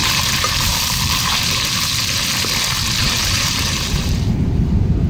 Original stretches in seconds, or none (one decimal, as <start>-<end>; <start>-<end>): 2.3-3.0

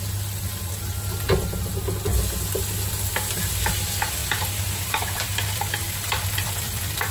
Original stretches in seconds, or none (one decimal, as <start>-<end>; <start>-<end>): 0.0-4.2

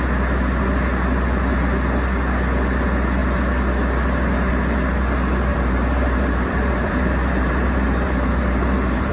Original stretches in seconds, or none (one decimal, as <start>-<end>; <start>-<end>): 0.0-5.5